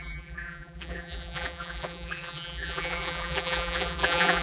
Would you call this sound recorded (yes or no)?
no